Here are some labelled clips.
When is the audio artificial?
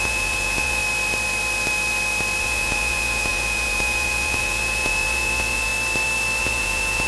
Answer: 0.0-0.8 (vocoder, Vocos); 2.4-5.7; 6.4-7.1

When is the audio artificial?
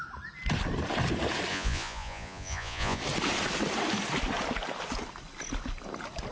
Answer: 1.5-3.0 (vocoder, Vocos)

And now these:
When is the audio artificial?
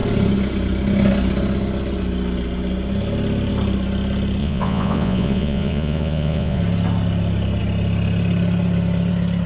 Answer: 4.4-6.6 (vocoder, Vocos)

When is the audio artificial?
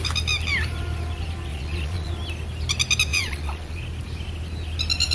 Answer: 1.5-2.1 (vocoder, Vocos); 3.1-3.8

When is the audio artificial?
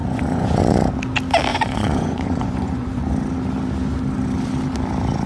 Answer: 0.0-0.9 (vocoder, Vocos); 1.5-3.1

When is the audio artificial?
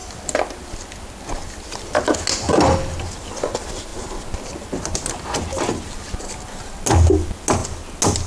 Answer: none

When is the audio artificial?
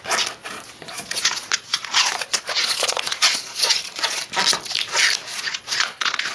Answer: 0.4-4.2 (vocoder, Vocos); 5.3-6.3